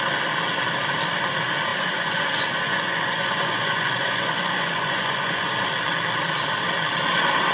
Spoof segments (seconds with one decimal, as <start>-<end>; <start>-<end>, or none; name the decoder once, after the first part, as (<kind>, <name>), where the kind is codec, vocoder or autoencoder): 1.7-5.5 (vocoder, Vocos)

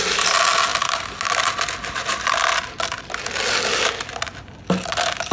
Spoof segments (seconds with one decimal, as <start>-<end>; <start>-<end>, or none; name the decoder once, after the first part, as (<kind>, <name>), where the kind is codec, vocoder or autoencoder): none